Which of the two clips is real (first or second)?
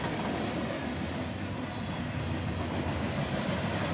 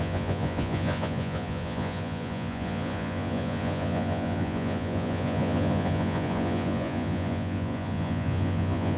first